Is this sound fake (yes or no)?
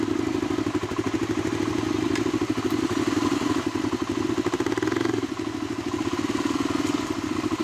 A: no